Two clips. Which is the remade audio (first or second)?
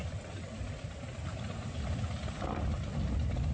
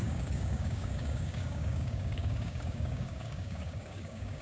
second